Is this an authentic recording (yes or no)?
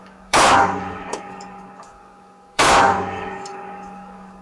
no